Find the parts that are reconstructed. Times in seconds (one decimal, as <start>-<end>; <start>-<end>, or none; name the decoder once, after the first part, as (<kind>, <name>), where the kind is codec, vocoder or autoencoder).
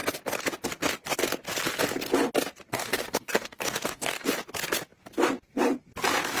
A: 2.7-4.3 (codec, DAC)